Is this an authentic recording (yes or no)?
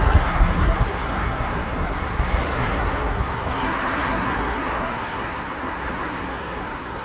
no